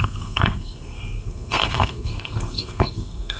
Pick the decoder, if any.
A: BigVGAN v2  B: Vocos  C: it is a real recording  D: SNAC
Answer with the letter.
D